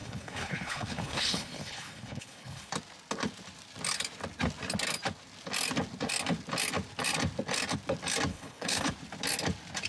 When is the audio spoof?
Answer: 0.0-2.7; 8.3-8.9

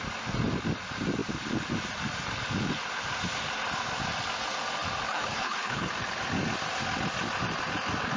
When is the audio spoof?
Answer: 5.1-5.9